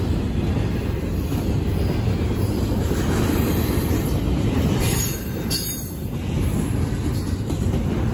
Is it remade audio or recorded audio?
recorded